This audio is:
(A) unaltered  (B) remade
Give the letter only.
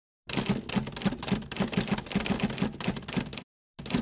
A